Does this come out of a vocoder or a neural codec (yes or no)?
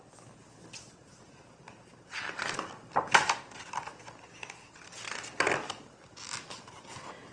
no